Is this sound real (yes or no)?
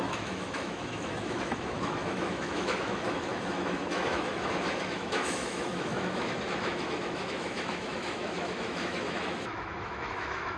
no